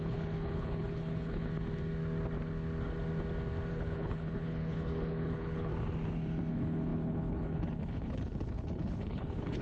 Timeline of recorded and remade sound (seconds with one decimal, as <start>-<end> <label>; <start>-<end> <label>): 0.0-1.5 remade; 1.5-3.7 recorded; 3.7-5.7 remade; 5.7-6.5 recorded; 6.5-9.6 remade

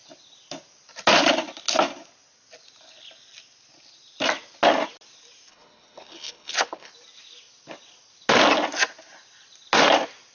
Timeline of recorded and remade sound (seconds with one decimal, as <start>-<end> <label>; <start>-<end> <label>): 0.0-5.5 recorded; 5.5-6.9 remade; 6.9-10.3 recorded